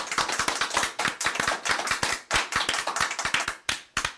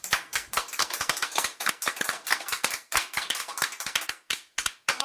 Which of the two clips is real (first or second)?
first